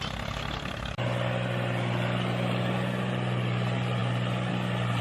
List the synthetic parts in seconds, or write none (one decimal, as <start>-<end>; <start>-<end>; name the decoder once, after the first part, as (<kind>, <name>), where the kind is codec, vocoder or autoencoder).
none